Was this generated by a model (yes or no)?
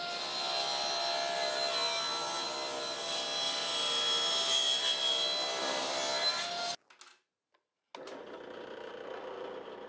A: no